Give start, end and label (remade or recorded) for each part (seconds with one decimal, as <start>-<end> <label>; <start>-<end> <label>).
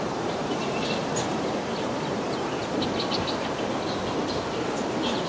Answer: 0.0-1.0 remade; 1.0-1.9 recorded; 1.9-2.6 remade; 2.6-4.5 recorded; 4.5-5.3 remade